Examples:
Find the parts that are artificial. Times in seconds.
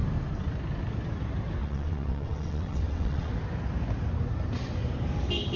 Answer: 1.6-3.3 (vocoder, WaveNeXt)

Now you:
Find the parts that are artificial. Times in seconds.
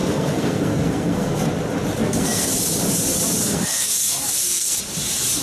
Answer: 0.0-1.5 (codec, SNAC); 2.0-2.5; 3.4-4.8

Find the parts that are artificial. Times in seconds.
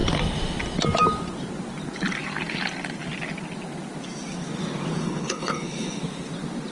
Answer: 5.0-6.0 (codec, HILCodec)